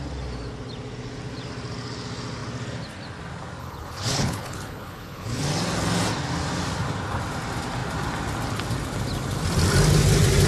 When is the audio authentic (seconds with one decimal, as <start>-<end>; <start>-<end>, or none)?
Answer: 0.0-3.6; 5.4-10.5